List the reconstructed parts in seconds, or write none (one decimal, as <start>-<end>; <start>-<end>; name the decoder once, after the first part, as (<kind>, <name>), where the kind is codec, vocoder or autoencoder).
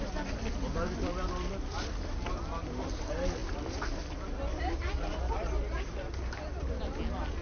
none